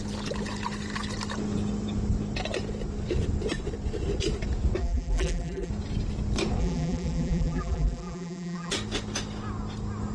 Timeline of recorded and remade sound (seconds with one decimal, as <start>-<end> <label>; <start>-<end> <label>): 0.0-4.8 recorded; 4.8-5.7 remade; 5.7-6.6 recorded; 6.6-8.7 remade; 8.7-10.1 recorded